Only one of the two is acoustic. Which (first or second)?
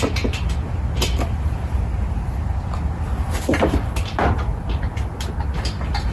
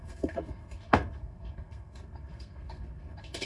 first